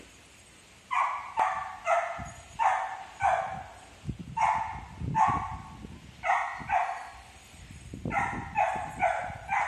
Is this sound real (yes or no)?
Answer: yes